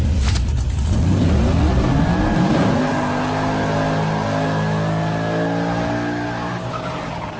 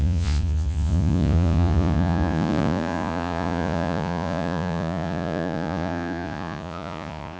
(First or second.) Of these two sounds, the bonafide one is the first